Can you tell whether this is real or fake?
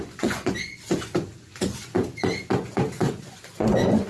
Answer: fake